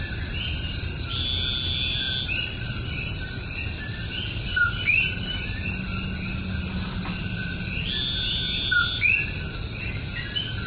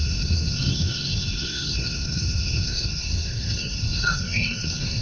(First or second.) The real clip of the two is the first